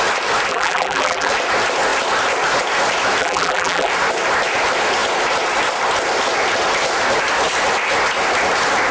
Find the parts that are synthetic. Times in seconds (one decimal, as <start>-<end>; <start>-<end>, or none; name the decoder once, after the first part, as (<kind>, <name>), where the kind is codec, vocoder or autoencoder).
0.5-1.3 (vocoder, BigVGAN v2); 3.2-3.9

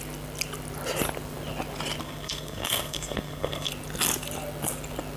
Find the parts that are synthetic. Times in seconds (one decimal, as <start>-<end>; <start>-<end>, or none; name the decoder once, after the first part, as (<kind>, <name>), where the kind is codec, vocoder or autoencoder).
2.0-3.7 (codec, SNAC)